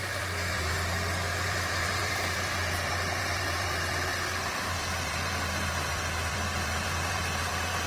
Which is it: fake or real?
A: fake